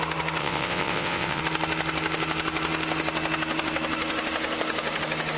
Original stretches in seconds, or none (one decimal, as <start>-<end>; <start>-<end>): 0.0-0.4; 1.4-5.4